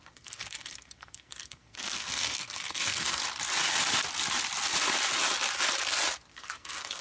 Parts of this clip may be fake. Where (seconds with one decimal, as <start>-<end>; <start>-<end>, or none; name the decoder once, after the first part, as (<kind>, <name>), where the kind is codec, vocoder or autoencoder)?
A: 0.0-3.2 (codec, SNAC); 6.3-7.0